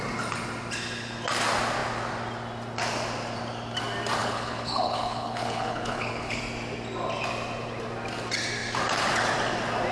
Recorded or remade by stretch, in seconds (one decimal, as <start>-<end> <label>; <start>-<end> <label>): 0.0-4.2 recorded; 4.2-6.4 remade; 6.4-9.9 recorded